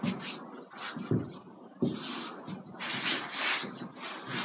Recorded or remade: recorded